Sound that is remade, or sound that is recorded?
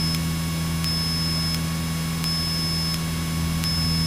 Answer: recorded